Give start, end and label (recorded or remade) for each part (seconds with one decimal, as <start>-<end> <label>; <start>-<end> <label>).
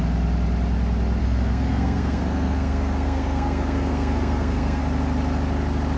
0.0-1.2 recorded; 1.2-4.8 remade; 4.8-6.0 recorded